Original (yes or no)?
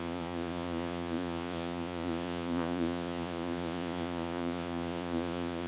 no